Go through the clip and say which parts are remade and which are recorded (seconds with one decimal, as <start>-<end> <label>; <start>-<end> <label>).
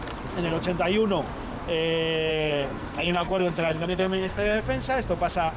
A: 0.0-2.3 recorded; 2.3-4.6 remade; 4.6-5.6 recorded